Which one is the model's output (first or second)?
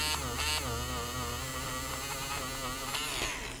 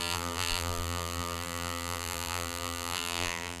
second